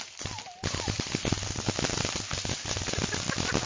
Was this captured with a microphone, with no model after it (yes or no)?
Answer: no